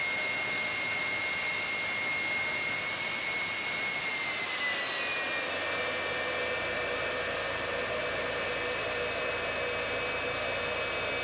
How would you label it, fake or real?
real